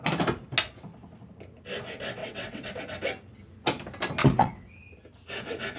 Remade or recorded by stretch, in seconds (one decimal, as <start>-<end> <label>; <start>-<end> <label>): 0.0-2.2 recorded; 2.2-2.7 remade; 2.7-4.2 recorded; 4.2-4.7 remade; 4.7-5.8 recorded